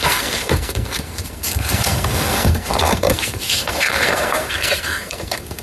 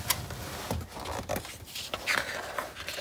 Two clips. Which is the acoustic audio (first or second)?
second